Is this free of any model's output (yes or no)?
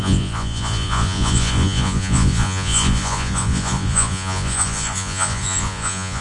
no